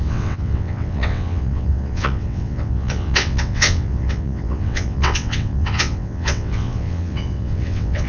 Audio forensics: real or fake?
fake